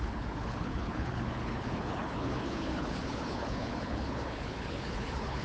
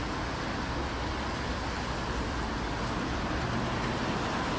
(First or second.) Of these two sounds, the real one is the second